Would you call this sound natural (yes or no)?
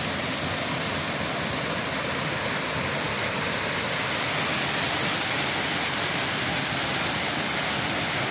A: yes